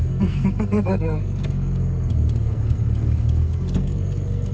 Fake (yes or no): yes